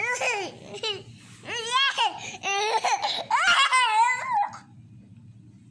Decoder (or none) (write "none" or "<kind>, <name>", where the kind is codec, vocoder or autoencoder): none